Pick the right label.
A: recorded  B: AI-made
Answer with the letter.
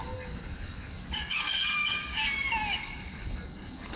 B